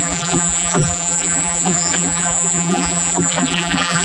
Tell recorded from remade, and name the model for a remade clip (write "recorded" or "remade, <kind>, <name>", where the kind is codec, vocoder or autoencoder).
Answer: remade, vocoder, BigVGAN v2